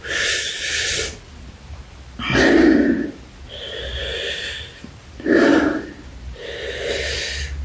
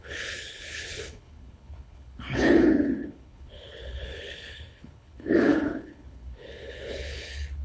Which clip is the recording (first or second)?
first